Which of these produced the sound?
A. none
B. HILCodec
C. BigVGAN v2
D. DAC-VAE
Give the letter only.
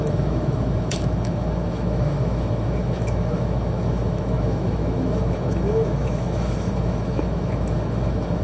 D